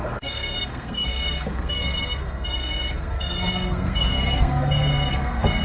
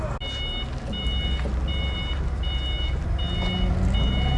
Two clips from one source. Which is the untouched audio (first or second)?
second